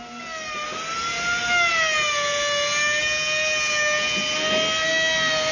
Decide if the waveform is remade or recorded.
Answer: recorded